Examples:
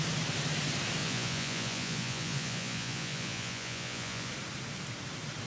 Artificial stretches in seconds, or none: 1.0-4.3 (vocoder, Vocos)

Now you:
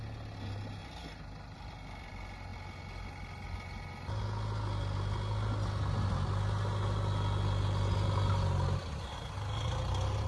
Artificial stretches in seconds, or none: 1.0-2.1 (vocoder, BigVGAN v2)

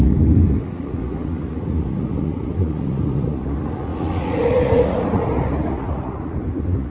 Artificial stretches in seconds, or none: 0.0-6.9 (vocoder, Vocos)

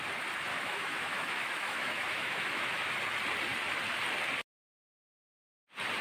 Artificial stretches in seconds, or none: 0.5-2.9 (autoencoder, DAC-VAE)

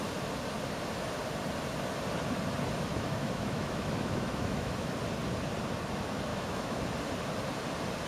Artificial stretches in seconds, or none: 2.9-4.9 (autoencoder, DAC-VAE); 6.3-6.8

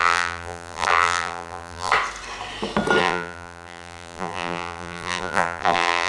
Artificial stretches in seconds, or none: 0.0-1.9 (vocoder, BigVGAN v2); 3.0-6.1

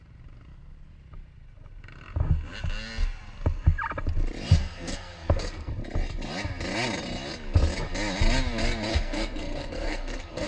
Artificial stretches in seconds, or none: 4.6-5.7 (codec, SNAC); 8.9-10.5

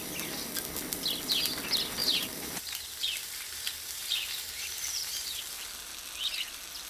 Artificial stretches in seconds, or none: 2.0-5.4 (vocoder, BigVGAN v2)